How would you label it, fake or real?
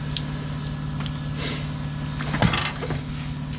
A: real